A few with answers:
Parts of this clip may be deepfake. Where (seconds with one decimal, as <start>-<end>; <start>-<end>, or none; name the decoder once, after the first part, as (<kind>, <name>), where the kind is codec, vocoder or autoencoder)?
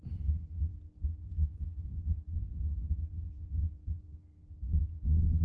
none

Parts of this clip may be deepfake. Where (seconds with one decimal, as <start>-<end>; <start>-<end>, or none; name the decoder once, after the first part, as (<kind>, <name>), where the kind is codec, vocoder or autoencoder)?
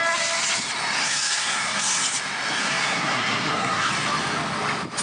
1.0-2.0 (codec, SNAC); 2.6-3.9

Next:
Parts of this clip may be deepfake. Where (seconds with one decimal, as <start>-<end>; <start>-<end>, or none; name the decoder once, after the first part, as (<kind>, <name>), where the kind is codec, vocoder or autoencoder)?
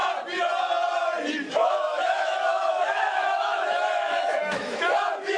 1.5-5.4 (autoencoder, DAC-VAE)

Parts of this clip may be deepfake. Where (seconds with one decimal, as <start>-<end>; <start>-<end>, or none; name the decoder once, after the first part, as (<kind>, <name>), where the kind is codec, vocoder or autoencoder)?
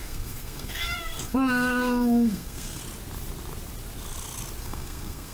0.0-2.8 (codec, SNAC); 4.6-5.3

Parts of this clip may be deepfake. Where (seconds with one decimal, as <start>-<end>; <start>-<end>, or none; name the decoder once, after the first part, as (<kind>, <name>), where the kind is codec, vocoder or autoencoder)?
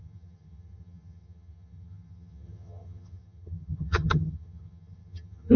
0.0-5.6 (vocoder, HiFi-GAN)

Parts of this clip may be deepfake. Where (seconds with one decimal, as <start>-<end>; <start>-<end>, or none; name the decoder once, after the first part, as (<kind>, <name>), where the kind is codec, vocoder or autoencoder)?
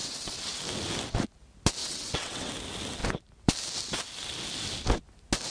0.0-0.6 (vocoder, WaveNeXt); 1.8-2.5